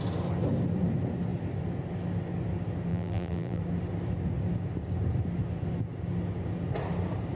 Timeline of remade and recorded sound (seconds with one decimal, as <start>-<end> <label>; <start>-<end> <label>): 0.0-2.9 recorded; 2.9-3.6 remade; 3.6-7.4 recorded